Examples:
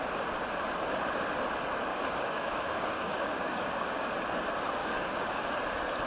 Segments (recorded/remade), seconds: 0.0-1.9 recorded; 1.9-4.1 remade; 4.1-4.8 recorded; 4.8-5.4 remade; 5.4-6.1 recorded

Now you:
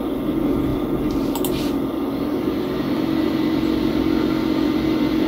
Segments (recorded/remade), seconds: 0.0-5.3 recorded

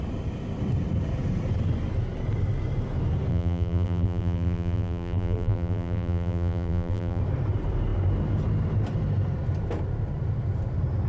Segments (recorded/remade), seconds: 0.0-3.3 recorded; 3.3-7.2 remade; 7.2-11.1 recorded

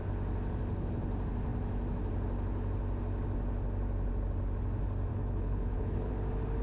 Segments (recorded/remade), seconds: 0.0-5.1 recorded; 5.1-6.1 remade; 6.1-6.6 recorded